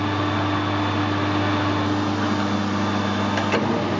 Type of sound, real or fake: real